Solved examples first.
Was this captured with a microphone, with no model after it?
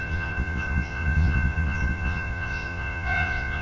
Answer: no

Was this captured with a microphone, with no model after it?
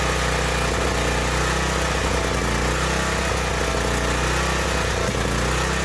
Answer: yes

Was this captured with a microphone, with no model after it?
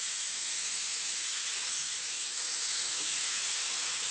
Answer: no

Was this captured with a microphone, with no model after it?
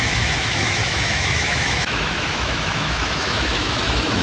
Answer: no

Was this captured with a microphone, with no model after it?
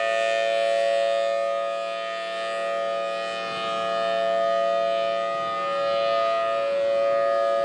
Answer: yes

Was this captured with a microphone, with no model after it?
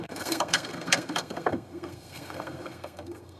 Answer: no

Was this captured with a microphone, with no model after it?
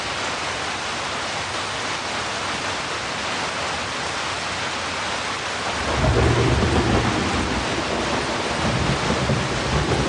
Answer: yes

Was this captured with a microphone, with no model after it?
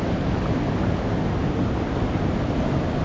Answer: yes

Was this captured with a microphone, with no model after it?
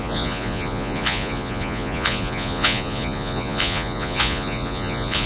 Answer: no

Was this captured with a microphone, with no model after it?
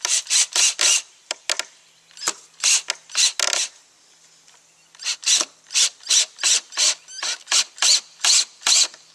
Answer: yes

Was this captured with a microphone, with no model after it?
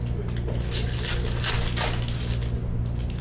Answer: yes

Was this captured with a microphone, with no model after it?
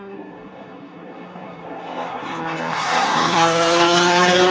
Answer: no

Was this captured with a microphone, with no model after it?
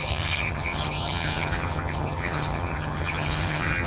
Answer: no